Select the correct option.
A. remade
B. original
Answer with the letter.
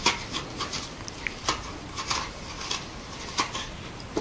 B